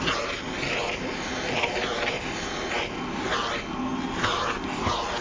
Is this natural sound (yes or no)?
yes